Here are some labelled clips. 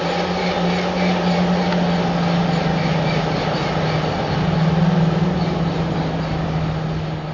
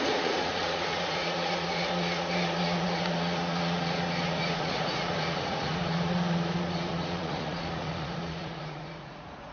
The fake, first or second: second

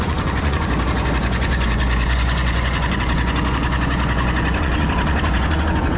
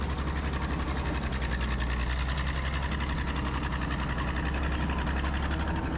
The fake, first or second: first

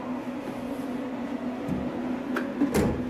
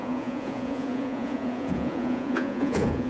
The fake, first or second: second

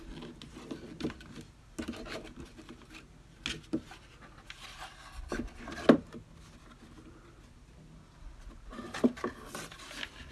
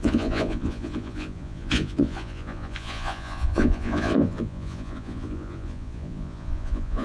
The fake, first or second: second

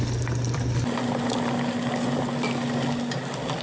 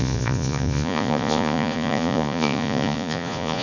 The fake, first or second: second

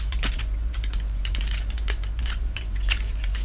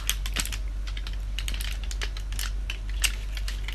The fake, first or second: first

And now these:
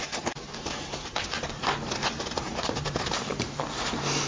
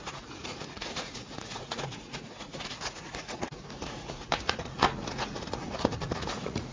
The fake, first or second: second